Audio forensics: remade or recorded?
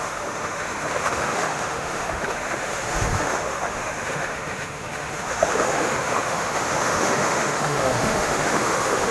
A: remade